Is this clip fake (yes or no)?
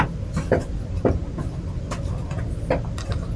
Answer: no